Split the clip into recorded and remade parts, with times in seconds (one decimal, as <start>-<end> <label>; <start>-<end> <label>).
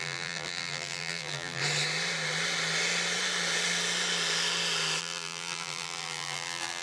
0.0-1.6 remade; 1.6-5.0 recorded; 5.0-6.8 remade